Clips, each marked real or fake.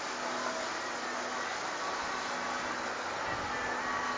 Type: real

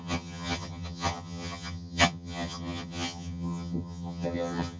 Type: fake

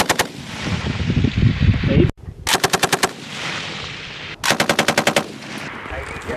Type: real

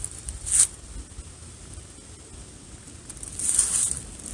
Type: real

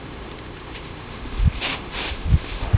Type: fake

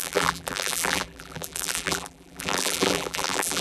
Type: fake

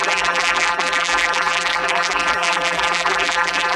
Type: fake